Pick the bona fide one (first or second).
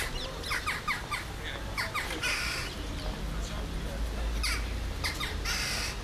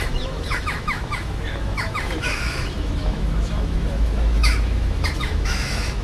first